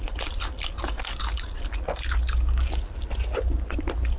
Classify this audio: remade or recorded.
recorded